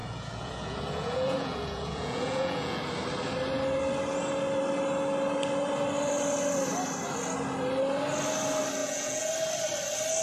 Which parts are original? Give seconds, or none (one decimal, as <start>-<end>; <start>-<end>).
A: 2.8-8.8; 9.3-10.2